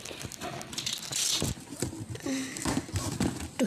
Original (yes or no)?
yes